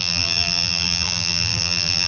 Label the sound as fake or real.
fake